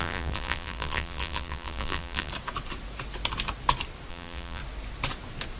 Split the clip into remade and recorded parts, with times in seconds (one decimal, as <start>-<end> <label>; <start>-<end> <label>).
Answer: 0.0-2.3 remade; 2.3-4.1 recorded; 4.1-4.6 remade; 4.6-5.6 recorded